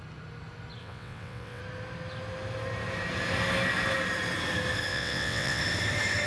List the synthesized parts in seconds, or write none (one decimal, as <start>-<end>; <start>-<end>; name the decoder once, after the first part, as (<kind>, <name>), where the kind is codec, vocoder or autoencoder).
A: 0.8-1.6 (vocoder, WaveNeXt); 4.9-5.6